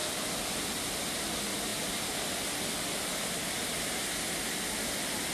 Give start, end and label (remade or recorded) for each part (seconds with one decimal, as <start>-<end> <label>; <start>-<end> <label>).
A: 0.0-0.5 remade; 0.5-5.3 recorded